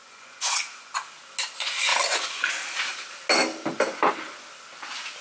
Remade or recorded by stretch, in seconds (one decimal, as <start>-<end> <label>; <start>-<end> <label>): 0.0-0.9 remade; 0.9-1.9 recorded; 1.9-2.5 remade; 2.5-5.2 recorded